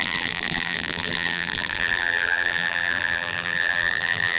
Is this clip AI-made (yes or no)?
yes